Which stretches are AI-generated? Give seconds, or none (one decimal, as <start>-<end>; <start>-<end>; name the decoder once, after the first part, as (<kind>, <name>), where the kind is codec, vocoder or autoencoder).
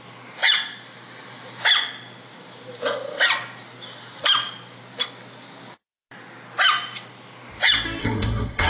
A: 8.0-8.7 (codec, SNAC)